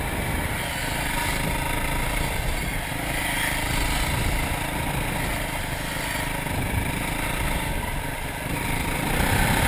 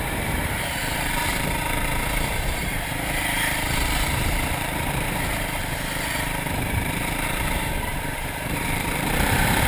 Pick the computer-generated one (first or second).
second